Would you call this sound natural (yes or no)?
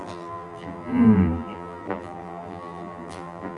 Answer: no